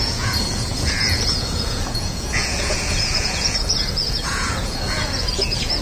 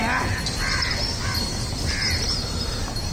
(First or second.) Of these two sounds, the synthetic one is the first